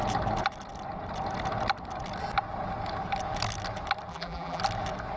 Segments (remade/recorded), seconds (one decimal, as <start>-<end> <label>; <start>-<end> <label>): 0.0-4.1 recorded; 4.1-4.6 remade; 4.6-5.2 recorded